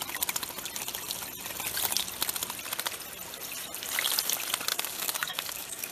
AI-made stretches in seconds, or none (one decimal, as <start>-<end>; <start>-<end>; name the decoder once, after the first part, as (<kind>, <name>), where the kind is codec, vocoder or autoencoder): 4.7-5.9 (codec, DAC)